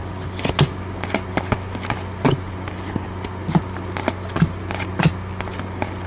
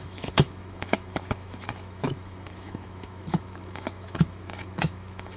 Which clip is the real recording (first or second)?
first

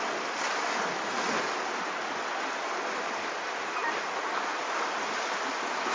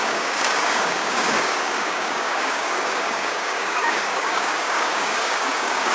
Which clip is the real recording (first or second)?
first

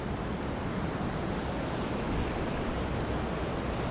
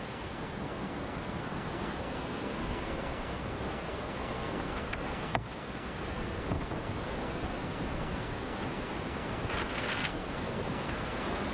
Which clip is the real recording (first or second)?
first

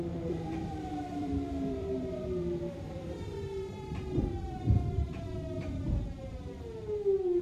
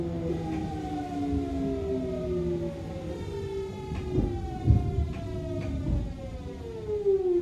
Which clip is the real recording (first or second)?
second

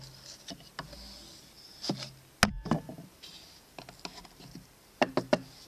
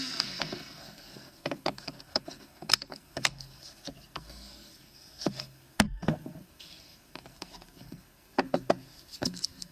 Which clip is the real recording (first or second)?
first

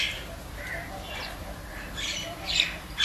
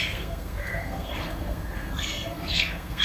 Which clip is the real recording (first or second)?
first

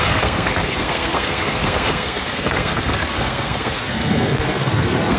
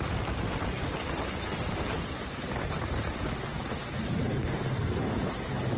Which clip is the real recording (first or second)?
second